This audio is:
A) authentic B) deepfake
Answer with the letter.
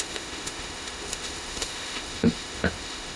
B